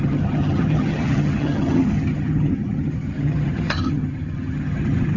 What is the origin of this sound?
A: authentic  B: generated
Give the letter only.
B